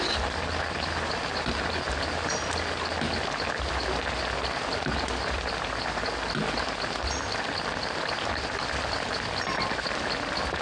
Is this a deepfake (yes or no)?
no